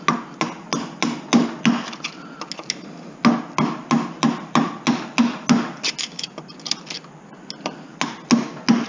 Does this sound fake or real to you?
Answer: real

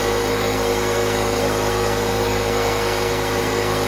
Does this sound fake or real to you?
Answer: fake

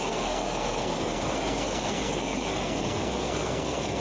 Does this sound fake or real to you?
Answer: fake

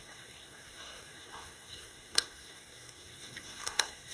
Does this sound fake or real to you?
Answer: fake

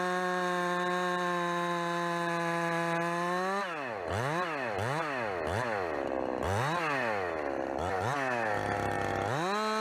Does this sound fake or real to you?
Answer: real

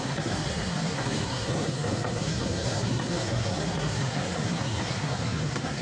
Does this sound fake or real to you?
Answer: fake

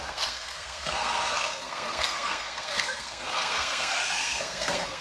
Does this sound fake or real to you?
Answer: fake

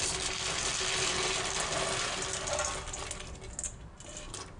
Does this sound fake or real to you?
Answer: real